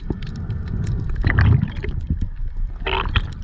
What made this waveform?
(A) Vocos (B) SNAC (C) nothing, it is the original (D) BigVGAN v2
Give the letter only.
C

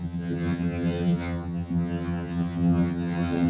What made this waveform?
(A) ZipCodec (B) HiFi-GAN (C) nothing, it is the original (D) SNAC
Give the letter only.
B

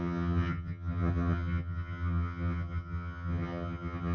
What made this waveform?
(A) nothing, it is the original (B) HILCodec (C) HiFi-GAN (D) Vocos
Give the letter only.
C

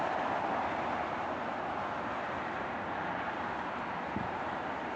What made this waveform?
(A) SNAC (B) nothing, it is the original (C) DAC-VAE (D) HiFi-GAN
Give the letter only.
B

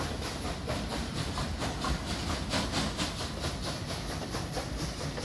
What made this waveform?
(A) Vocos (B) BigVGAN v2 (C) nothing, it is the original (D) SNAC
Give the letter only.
B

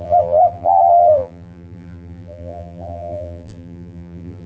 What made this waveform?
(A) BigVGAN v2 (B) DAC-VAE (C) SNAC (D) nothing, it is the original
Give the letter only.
A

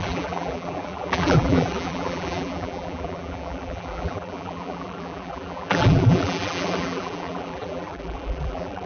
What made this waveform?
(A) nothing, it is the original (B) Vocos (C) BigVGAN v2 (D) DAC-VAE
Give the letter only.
C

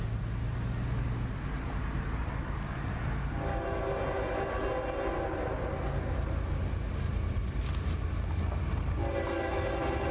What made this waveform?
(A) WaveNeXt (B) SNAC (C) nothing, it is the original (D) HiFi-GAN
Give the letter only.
C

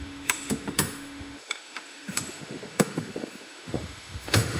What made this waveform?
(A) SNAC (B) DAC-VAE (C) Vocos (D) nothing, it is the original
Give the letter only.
B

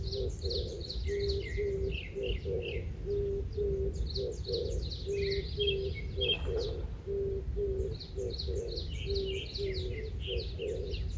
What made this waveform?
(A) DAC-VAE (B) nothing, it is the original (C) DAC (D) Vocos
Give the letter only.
B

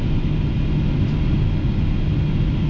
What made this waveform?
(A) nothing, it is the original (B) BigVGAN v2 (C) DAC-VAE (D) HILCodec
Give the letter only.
A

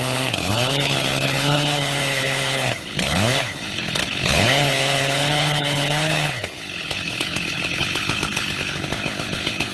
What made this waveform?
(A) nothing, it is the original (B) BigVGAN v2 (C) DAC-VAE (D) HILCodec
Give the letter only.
D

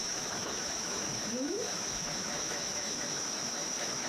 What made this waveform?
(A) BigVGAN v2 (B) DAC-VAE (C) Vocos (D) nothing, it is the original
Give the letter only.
B